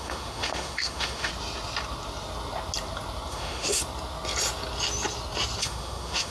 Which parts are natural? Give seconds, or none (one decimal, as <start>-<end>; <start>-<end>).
1.3-3.3; 3.8-5.6